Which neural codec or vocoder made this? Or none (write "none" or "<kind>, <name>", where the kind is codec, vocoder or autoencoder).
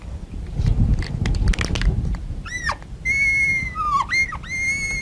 none